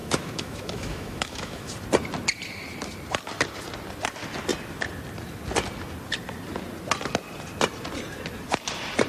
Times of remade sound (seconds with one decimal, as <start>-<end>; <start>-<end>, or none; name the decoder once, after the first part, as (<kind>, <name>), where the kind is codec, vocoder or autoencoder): 0.0-1.7 (autoencoder, DAC-VAE)